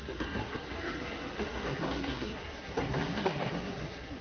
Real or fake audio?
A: fake